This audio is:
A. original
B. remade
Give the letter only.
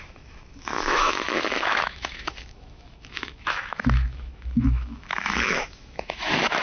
B